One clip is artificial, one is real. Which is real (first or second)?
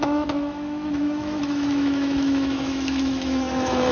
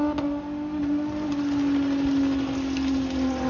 second